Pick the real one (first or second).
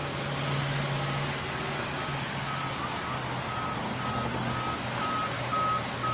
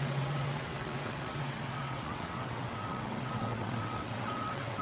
first